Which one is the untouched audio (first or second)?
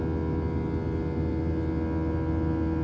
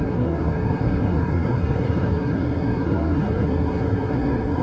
first